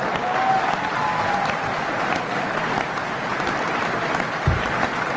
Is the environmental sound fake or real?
real